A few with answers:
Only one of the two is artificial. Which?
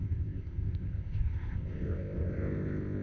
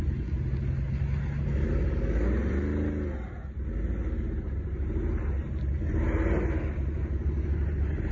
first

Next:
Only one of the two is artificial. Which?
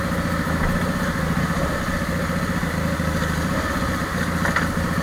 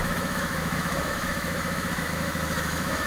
second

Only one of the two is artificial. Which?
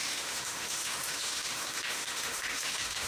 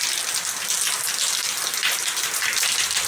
first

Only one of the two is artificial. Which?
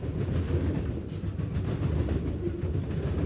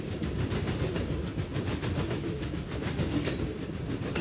second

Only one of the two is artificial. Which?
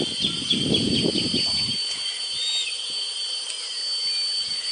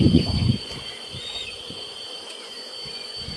second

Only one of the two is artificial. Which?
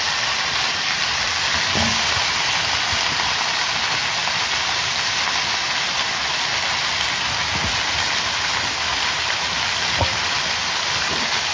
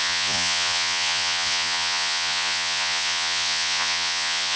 second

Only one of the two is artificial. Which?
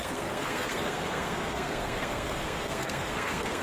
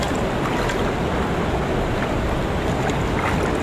first